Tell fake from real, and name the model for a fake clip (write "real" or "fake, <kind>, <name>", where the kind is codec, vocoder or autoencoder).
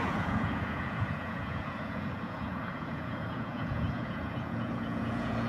fake, vocoder, Vocos